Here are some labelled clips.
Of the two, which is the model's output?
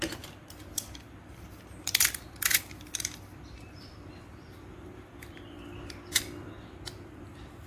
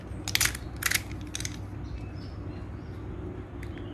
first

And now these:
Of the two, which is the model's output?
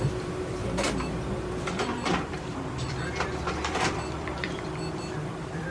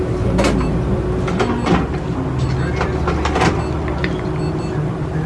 first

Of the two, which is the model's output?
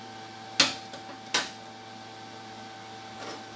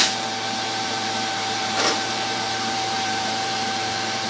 second